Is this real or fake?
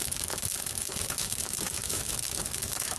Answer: fake